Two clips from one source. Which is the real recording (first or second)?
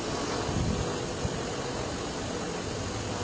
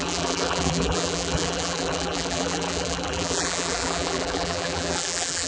first